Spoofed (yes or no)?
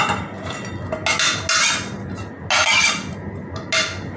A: no